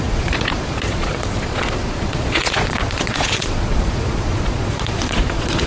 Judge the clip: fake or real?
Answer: fake